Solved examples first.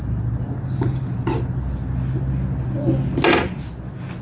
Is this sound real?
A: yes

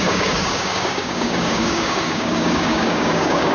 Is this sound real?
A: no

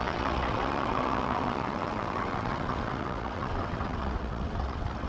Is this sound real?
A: no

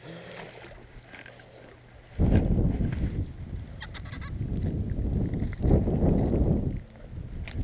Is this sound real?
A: yes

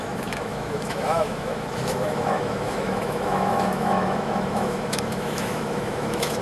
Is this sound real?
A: no